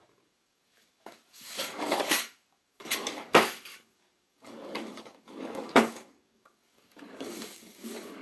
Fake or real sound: fake